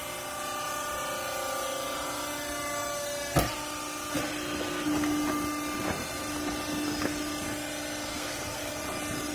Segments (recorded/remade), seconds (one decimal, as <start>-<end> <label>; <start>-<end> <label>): 0.0-8.1 recorded; 8.1-8.7 remade; 8.7-9.3 recorded